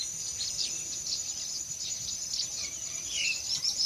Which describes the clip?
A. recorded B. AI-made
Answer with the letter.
B